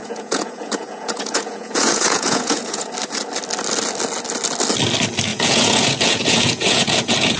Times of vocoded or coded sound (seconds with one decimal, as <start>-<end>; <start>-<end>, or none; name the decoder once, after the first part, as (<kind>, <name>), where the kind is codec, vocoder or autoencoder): 0.0-2.9 (vocoder, Vocos); 5.3-7.4